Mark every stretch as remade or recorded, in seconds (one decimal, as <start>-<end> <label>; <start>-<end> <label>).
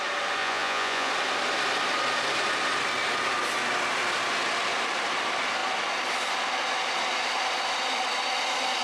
0.0-0.4 recorded; 0.4-1.1 remade; 1.1-8.8 recorded